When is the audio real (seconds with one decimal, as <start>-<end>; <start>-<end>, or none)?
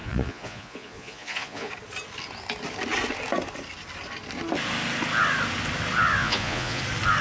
1.7-6.2; 6.8-7.2